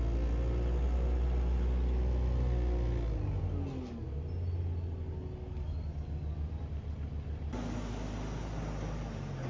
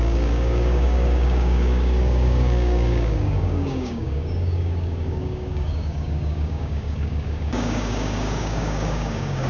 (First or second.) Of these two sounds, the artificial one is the second